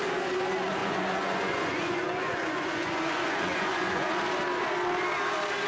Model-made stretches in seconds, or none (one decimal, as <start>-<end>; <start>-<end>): 0.8-4.1